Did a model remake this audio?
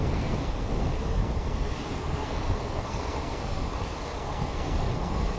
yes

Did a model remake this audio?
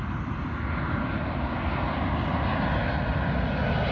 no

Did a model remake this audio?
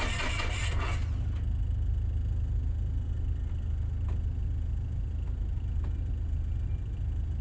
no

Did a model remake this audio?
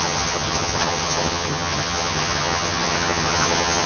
yes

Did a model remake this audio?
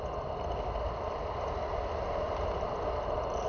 no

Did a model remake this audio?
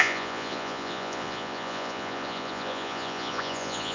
yes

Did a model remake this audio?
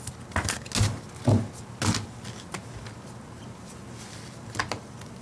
no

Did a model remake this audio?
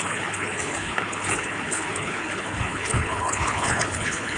yes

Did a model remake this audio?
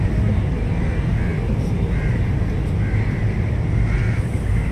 no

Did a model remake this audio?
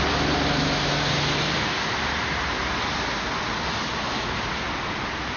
no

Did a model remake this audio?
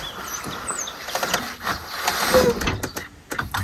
no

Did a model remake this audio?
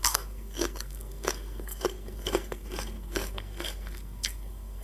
yes